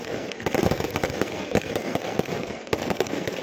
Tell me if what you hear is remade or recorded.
remade